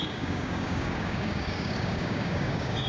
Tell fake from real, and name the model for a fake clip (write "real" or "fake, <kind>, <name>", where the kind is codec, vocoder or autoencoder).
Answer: fake, codec, DAC